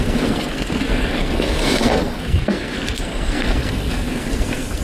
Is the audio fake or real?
fake